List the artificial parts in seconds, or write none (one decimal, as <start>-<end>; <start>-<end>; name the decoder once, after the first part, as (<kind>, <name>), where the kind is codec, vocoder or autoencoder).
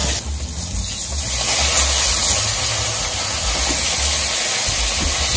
none